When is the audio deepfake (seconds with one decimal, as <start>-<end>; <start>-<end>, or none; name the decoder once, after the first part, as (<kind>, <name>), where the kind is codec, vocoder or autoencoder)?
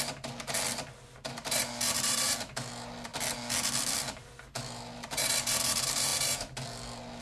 0.0-3.1 (vocoder, BigVGAN v2); 4.0-6.1